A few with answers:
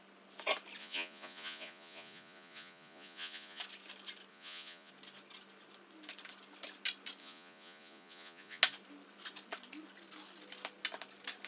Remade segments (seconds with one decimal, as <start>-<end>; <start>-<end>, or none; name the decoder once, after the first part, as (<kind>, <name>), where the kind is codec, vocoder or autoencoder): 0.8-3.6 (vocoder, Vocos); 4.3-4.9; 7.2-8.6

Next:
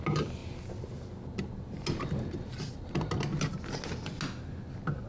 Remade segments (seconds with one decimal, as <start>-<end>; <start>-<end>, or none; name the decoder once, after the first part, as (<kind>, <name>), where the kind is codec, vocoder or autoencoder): none

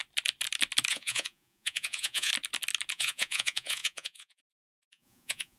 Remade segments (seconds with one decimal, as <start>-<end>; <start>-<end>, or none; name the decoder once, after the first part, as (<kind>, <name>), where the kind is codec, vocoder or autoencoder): 0.9-2.3 (vocoder, Vocos); 2.9-5.6